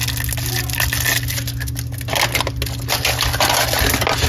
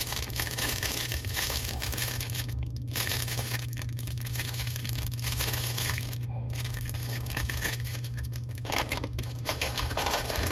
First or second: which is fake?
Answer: second